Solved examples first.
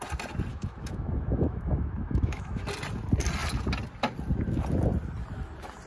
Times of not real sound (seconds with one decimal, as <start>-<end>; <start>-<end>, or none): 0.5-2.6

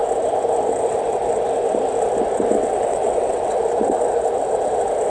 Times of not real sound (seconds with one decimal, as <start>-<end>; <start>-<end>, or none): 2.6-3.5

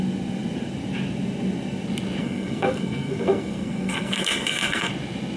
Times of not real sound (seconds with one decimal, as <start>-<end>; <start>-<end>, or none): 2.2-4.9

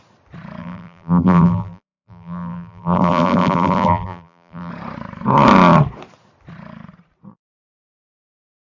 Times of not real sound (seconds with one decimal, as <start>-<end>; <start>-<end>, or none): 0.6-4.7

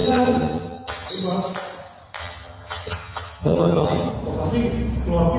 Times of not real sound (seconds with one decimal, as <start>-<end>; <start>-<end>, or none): 0.0-1.1; 2.2-4.1

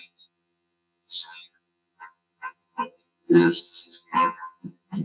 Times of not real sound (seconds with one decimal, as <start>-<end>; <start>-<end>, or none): 0.0-5.0

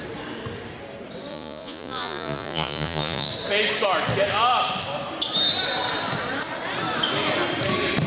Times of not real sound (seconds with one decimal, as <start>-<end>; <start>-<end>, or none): 1.3-3.3

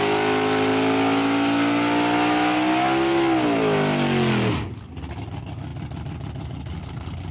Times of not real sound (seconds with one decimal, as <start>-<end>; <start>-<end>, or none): none